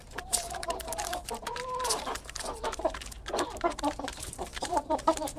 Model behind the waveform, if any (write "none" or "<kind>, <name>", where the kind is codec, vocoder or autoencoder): vocoder, BigVGAN v2